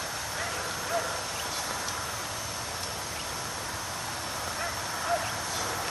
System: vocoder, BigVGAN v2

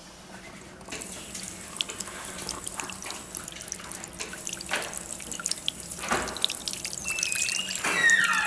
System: none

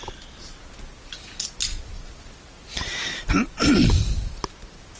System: none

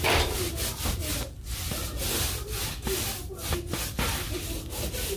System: none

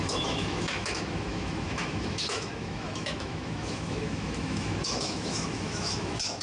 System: autoencoder, DAC-VAE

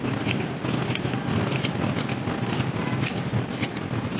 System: none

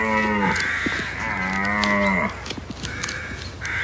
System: none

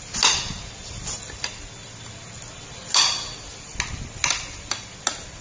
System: none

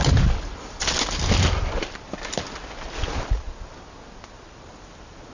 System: none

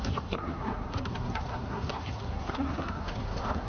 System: codec, SNAC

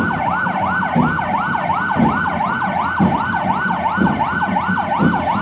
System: none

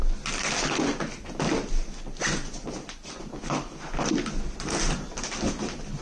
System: none